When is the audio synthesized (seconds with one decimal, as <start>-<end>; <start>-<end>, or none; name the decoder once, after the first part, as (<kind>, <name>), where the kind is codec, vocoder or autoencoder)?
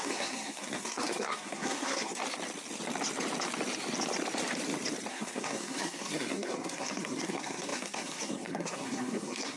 0.0-2.2 (codec, SNAC); 5.1-9.6